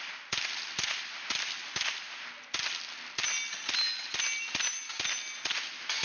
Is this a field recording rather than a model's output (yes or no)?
yes